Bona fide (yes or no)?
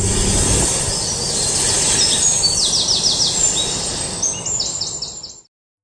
yes